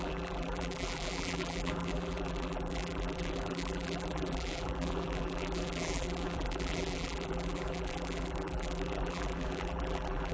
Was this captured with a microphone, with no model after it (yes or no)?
no